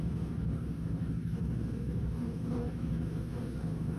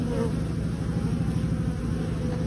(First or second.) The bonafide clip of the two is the second